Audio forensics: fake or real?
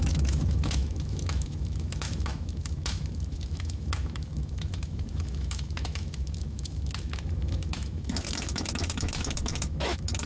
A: fake